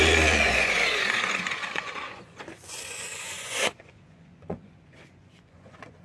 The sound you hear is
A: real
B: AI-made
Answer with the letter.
B